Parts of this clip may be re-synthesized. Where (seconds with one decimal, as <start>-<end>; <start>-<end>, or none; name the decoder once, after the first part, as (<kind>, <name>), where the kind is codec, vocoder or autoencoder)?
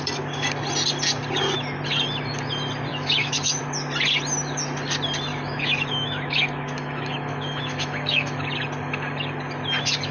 2.9-3.6 (autoencoder, DAC-VAE); 5.3-8.4